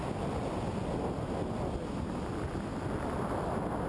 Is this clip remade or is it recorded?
recorded